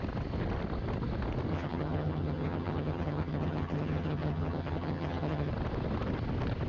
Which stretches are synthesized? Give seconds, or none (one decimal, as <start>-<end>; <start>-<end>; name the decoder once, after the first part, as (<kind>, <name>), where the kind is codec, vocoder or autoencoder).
1.5-5.5 (vocoder, HiFi-GAN)